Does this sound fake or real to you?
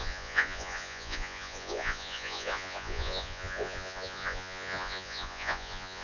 fake